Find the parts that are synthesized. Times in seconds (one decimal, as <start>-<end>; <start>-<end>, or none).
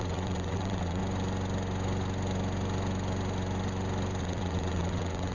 0.0-1.0; 4.2-5.3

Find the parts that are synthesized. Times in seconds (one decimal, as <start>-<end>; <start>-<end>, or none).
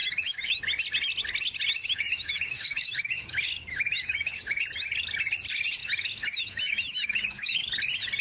0.0-0.6; 1.8-4.6; 5.8-7.7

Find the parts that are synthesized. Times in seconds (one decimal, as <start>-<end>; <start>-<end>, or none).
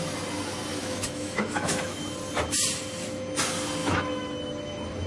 0.7-2.0; 3.8-4.3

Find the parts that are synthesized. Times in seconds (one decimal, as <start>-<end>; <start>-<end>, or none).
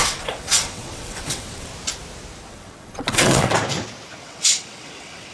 0.0-1.7; 2.5-3.5; 4.2-5.3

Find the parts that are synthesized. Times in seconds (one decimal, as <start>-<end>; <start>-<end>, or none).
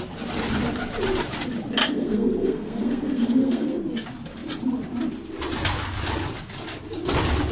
1.8-3.8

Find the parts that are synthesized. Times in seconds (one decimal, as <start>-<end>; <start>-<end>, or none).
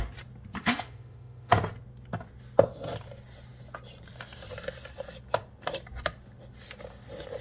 0.6-1.6